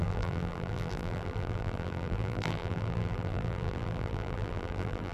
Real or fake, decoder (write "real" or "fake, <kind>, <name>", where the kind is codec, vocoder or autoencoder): fake, vocoder, BigVGAN v2